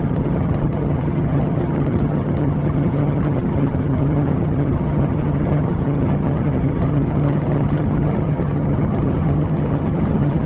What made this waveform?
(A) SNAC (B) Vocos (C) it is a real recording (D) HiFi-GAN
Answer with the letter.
D